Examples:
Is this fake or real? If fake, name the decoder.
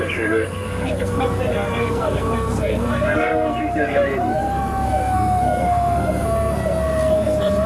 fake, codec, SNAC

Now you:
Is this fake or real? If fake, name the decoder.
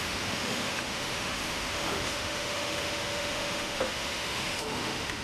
fake, autoencoder, DAC-VAE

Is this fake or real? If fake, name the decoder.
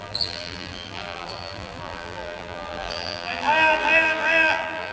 fake, vocoder, BigVGAN v2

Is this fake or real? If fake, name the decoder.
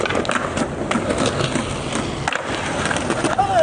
real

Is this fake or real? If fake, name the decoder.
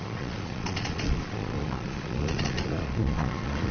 fake, vocoder, Vocos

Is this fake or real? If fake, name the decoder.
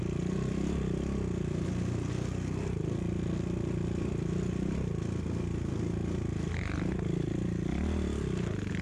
real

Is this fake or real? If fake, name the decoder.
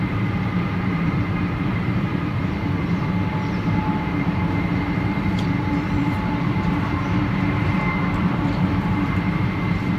fake, vocoder, BigVGAN v2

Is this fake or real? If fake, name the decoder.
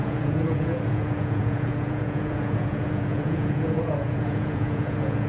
fake, vocoder, Vocos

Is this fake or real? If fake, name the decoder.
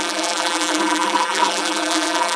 fake, vocoder, BigVGAN v2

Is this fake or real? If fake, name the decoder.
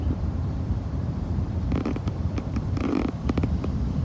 fake, vocoder, BigVGAN v2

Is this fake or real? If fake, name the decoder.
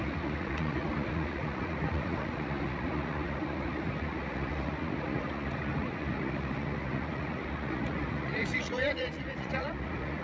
fake, vocoder, Vocos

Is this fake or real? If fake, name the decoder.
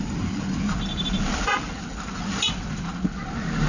real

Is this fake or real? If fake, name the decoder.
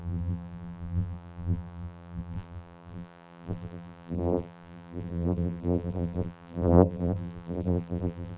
fake, vocoder, BigVGAN v2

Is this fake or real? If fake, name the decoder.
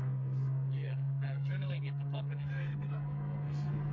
fake, codec, SNAC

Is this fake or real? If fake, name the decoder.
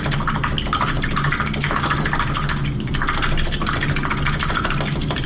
real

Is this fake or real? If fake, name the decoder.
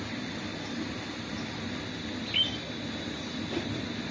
real